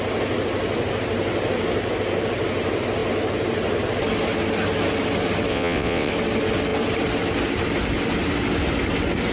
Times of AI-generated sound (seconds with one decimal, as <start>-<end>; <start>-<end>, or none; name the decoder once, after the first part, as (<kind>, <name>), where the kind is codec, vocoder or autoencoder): 5.5-6.1 (vocoder, WaveNeXt)